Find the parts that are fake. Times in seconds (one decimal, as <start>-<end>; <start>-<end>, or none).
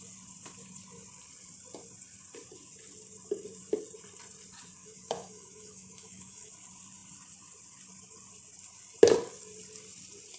4.8-6.5